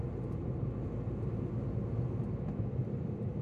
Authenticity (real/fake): real